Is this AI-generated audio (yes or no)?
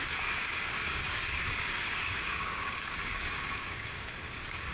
yes